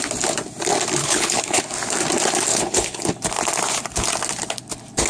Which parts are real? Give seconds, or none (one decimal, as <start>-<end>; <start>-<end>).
0.0-1.0; 1.6-2.5; 3.1-5.1